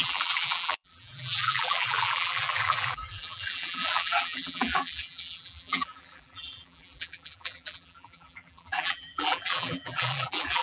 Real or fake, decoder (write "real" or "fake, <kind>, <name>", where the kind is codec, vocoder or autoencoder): fake, vocoder, BigVGAN v2